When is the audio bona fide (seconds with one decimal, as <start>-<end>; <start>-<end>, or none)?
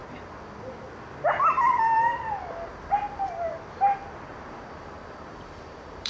0.0-4.3